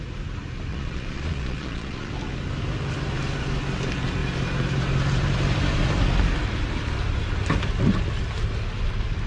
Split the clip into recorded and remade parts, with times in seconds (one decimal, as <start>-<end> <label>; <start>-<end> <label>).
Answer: 0.0-0.7 recorded; 0.7-2.1 remade; 2.1-9.3 recorded